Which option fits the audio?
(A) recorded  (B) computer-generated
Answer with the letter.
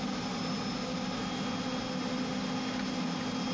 A